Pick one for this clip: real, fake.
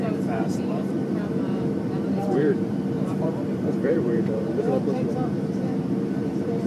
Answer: fake